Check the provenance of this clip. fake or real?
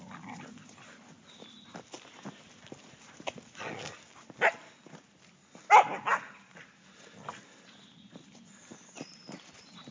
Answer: real